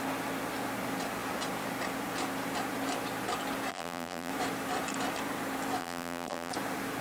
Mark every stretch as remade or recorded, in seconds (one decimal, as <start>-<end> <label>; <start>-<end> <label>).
0.0-3.7 recorded; 3.7-4.3 remade; 4.3-5.8 recorded; 5.8-6.5 remade; 6.5-7.0 recorded